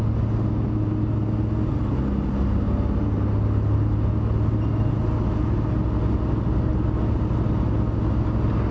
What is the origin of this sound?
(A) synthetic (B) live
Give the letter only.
B